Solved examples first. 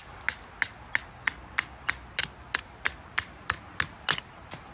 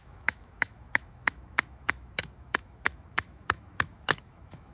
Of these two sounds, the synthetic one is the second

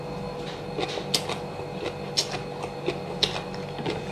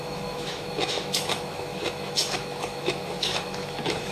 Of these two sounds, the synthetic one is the second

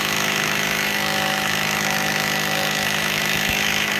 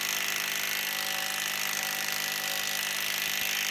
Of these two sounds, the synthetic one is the first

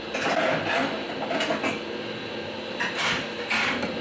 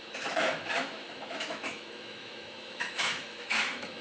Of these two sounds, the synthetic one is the second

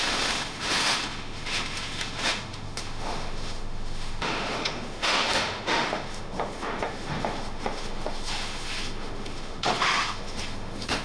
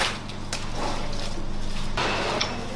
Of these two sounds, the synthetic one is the first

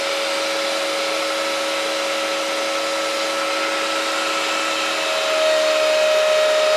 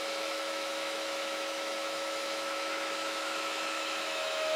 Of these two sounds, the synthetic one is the second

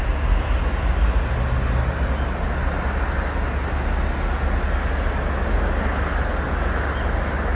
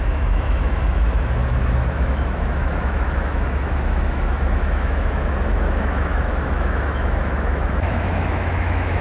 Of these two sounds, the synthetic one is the second